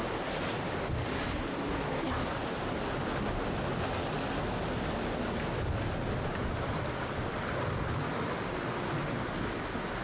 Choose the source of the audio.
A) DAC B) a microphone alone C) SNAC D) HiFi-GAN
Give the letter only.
B